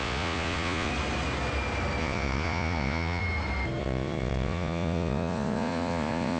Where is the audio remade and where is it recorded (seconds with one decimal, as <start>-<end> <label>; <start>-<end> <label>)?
0.0-0.9 remade; 0.9-2.0 recorded; 2.0-3.2 remade; 3.2-3.8 recorded; 3.8-6.4 remade